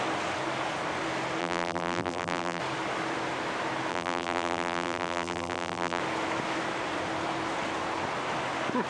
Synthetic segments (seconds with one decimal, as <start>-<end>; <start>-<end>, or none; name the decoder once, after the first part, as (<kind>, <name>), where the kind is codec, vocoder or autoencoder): 1.4-2.6 (vocoder, BigVGAN v2); 3.9-6.0